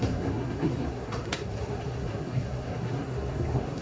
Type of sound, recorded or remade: remade